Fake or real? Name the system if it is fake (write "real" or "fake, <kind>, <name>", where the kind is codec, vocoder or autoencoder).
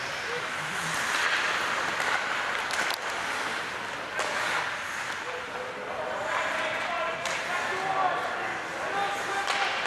real